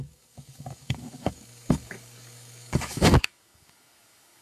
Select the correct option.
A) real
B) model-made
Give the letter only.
B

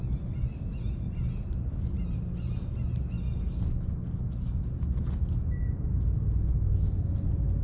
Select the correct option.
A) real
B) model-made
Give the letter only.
A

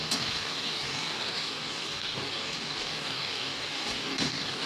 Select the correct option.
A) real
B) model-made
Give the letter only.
B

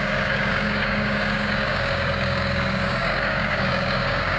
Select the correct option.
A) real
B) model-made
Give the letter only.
B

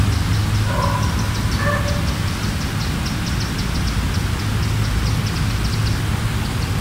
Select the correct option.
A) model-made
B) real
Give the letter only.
B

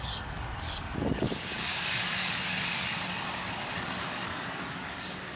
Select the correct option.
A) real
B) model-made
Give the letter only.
B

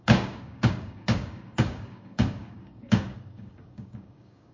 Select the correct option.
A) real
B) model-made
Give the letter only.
B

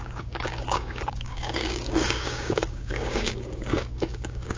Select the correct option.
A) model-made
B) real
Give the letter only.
A